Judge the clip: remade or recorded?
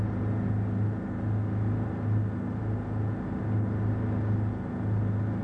recorded